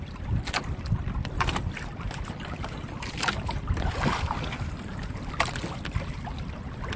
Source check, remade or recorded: recorded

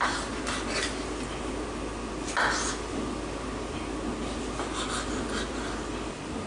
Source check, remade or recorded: recorded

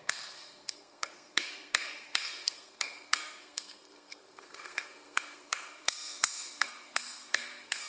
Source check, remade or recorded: remade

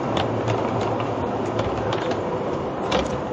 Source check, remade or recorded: recorded